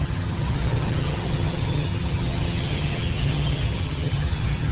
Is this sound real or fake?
fake